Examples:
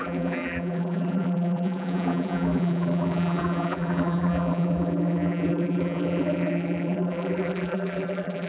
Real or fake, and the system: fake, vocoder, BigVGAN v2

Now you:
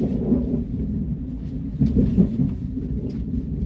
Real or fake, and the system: fake, vocoder, BigVGAN v2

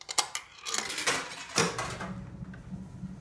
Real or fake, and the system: real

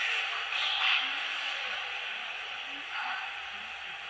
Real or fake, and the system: real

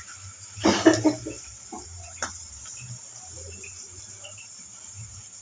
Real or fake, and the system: fake, vocoder, BigVGAN v2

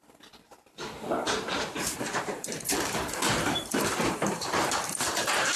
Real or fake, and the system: fake, vocoder, BigVGAN v2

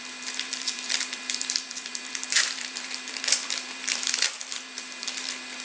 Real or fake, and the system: fake, vocoder, BigVGAN v2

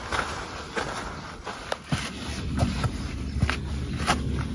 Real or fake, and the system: real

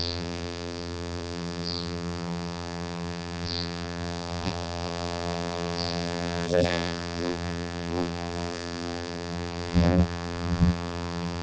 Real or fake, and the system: fake, vocoder, BigVGAN v2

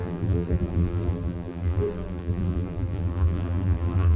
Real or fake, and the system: fake, vocoder, BigVGAN v2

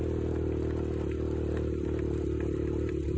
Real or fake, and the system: real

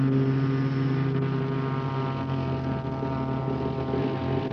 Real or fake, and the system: real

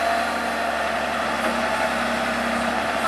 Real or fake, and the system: real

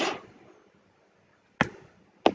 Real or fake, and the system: real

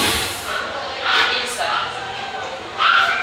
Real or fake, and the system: fake, vocoder, BigVGAN v2